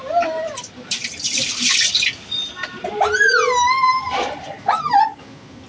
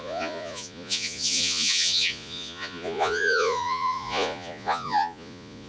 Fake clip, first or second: second